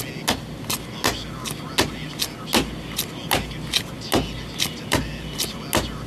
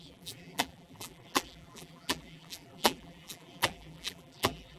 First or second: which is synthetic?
second